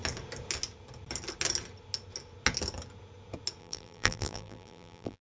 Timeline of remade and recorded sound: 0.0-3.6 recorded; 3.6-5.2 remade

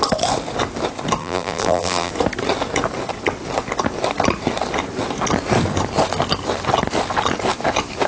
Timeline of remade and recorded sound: 0.0-1.2 recorded; 1.2-2.1 remade; 2.1-8.1 recorded

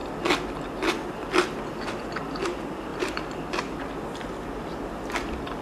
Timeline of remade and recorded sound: 0.0-1.7 recorded; 1.7-5.6 remade

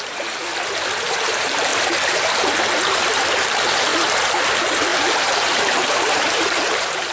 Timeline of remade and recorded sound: 0.0-0.5 remade; 0.5-1.1 recorded; 1.1-1.7 remade; 1.7-3.1 recorded; 3.1-3.9 remade; 3.9-4.5 recorded; 4.5-7.1 remade

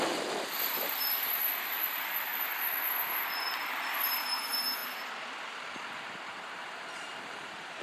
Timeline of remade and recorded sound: 0.0-2.3 remade; 2.3-3.3 recorded; 3.3-7.8 remade